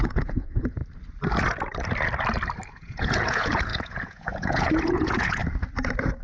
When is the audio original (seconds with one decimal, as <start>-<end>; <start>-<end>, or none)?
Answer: 0.8-2.7; 5.4-6.2